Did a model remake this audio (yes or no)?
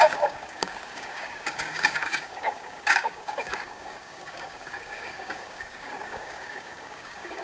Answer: yes